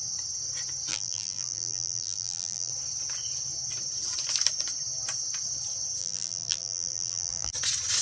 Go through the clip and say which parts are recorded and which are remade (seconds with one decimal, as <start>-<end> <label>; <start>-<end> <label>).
0.0-0.9 recorded; 0.9-2.7 remade; 2.7-6.0 recorded; 6.0-7.5 remade; 7.5-8.0 recorded